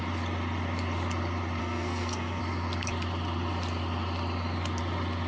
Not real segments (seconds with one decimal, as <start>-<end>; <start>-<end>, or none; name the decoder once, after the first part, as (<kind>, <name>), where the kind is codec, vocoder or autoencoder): 1.6-2.4 (codec, SNAC)

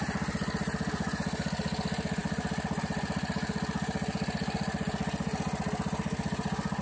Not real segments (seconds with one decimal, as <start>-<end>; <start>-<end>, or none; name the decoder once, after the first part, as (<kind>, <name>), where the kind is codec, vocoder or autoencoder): none

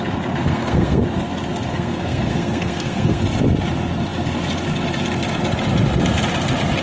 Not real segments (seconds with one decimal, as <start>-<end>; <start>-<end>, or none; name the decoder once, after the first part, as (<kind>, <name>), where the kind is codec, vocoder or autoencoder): 0.4-1.0 (codec, SNAC); 1.7-3.2

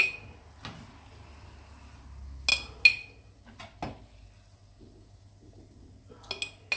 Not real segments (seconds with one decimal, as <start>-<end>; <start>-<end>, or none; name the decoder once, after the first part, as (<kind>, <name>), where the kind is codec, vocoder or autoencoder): none